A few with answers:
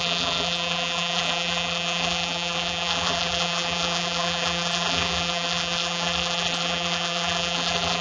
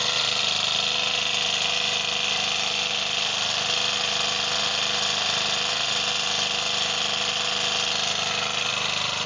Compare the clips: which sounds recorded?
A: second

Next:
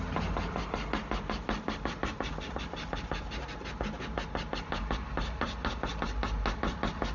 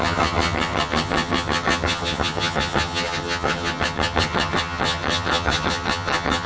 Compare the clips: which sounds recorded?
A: first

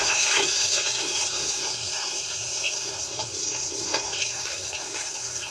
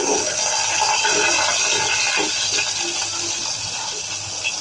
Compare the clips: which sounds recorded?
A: second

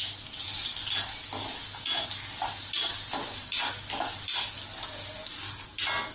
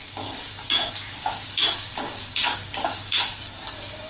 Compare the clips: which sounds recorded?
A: first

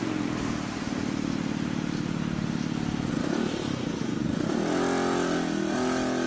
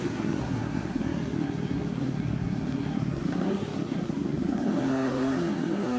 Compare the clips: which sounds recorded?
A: first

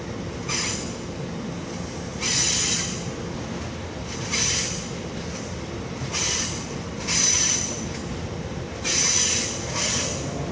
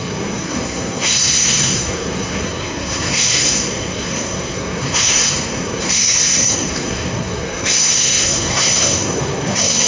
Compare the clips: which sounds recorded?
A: first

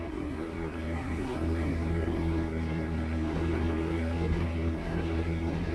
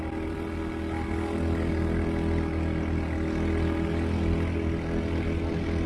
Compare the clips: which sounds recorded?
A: second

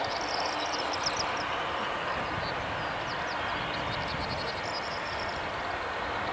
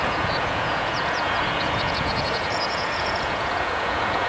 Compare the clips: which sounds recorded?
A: first